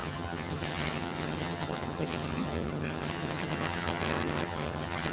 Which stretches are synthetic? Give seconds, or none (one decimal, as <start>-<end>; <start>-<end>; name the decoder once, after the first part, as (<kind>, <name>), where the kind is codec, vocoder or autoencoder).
0.0-5.1 (vocoder, HiFi-GAN)